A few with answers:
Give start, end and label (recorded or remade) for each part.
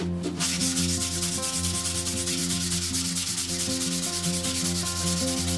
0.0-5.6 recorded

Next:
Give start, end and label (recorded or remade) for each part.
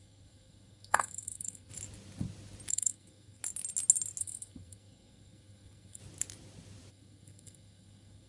0.0-1.7 remade; 1.7-2.7 recorded; 2.7-3.4 remade; 3.4-4.2 recorded; 4.2-6.0 remade; 6.0-6.9 recorded; 6.9-8.3 remade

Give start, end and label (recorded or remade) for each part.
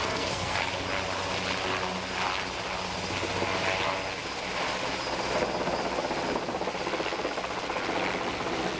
0.0-0.7 remade; 0.7-8.8 recorded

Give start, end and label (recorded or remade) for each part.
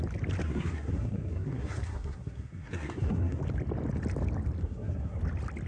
0.0-0.4 recorded; 0.4-3.4 remade; 3.4-4.6 recorded; 4.6-5.2 remade; 5.2-5.7 recorded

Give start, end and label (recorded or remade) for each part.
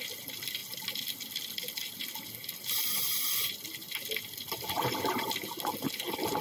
0.0-6.4 recorded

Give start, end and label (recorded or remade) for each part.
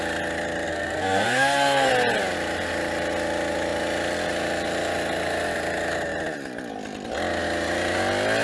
0.0-0.7 recorded; 0.7-1.9 remade; 1.9-8.4 recorded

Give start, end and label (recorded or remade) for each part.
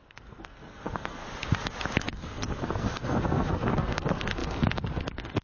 0.0-1.2 remade; 1.2-2.0 recorded; 2.0-5.4 remade